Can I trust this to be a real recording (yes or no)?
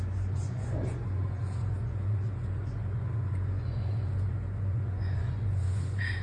no